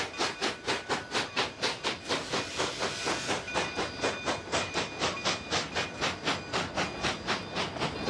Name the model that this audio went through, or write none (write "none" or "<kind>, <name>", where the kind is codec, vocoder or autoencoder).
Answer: none